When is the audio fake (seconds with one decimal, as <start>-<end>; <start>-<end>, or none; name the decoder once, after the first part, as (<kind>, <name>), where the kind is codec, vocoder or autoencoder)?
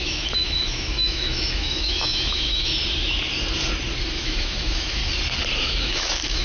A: 0.0-2.8 (autoencoder, DAC-VAE); 4.1-5.0; 5.6-6.4